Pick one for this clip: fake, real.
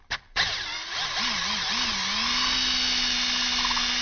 real